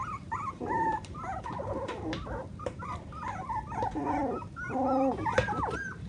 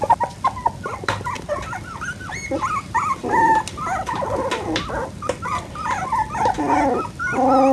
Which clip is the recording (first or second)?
second